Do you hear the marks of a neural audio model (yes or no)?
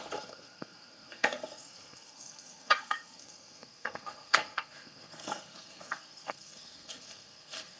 yes